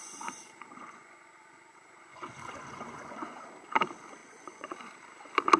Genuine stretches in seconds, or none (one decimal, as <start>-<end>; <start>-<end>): 3.4-4.2; 4.9-5.6